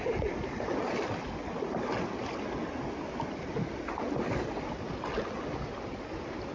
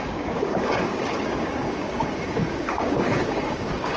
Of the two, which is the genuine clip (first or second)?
first